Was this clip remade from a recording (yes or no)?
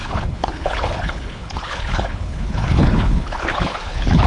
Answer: yes